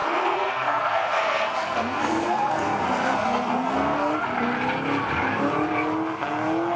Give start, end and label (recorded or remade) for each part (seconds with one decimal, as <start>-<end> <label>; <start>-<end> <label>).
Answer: 0.0-4.1 remade; 4.1-6.8 recorded